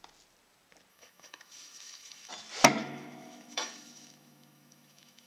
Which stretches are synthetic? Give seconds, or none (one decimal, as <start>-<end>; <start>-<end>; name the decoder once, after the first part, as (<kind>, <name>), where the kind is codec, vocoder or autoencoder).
0.9-2.3 (autoencoder, DAC-VAE); 2.8-5.3